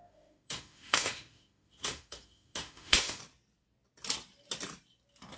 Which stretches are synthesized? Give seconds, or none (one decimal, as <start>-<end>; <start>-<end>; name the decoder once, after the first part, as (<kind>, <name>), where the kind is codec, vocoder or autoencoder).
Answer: 0.0-3.2 (autoencoder, DAC-VAE)